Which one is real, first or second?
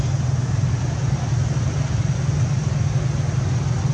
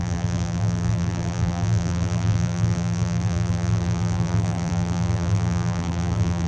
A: first